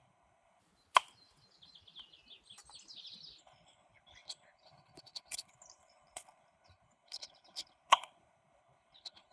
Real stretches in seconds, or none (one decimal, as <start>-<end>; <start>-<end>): 0.6-3.4